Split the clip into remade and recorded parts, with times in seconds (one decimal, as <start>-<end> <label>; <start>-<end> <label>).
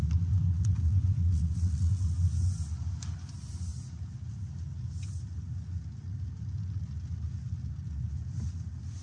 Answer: 0.0-0.5 recorded; 0.5-2.1 remade; 2.1-9.0 recorded